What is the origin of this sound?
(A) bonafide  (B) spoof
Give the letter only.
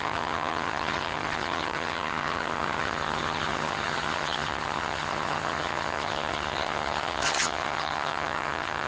B